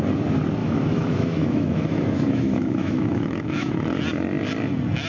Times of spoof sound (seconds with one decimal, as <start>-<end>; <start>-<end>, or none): 0.6-3.7